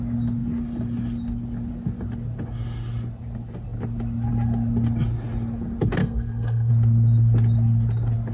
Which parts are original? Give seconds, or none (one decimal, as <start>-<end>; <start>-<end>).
0.0-6.0; 6.7-8.3